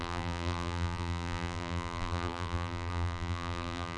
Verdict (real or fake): fake